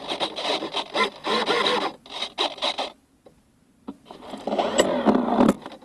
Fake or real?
real